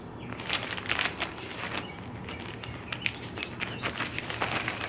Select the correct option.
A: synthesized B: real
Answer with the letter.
B